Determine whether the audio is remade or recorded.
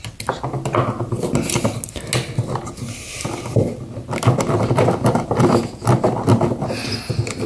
recorded